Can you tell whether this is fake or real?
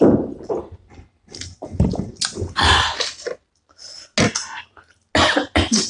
real